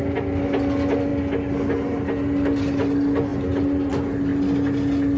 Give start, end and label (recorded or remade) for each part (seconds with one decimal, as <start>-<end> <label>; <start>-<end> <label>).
0.0-5.2 recorded

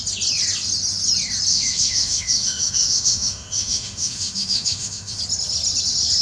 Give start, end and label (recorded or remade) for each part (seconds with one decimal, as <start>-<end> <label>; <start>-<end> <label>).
0.0-1.5 recorded; 1.5-5.2 remade; 5.2-6.2 recorded